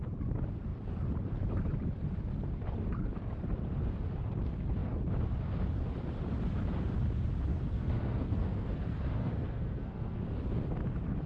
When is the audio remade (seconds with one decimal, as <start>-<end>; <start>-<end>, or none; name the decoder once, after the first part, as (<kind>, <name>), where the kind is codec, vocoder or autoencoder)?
7.5-10.2 (codec, SNAC)